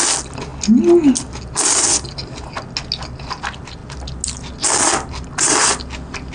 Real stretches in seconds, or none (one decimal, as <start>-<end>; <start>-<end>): 0.0-6.3